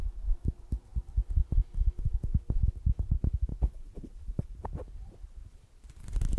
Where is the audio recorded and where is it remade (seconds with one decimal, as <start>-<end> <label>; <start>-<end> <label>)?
0.0-3.5 recorded; 3.5-4.5 remade; 4.5-6.4 recorded